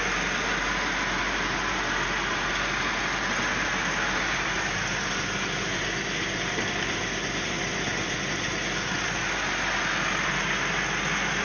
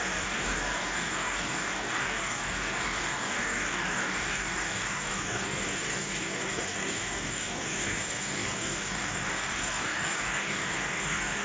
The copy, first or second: second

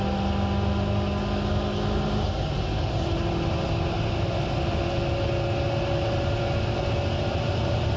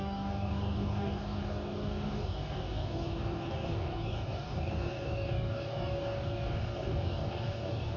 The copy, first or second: second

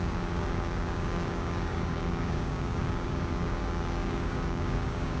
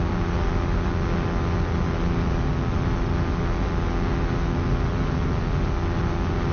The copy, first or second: first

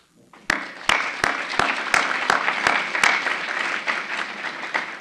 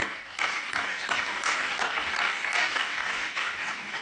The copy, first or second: second